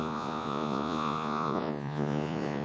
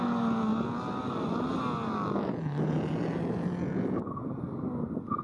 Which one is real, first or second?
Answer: second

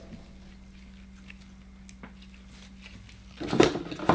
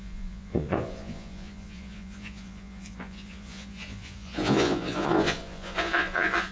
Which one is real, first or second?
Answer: first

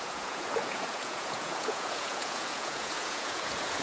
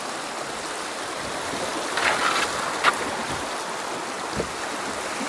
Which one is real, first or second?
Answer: second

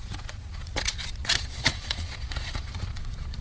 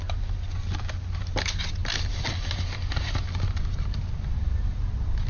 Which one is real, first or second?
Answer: second